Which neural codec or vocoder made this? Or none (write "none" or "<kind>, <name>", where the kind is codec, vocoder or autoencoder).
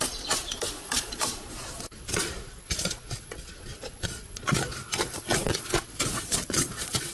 vocoder, Vocos